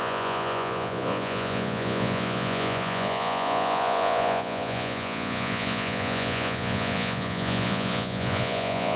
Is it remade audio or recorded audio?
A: remade